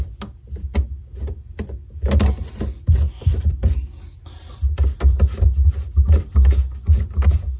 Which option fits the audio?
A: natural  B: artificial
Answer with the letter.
A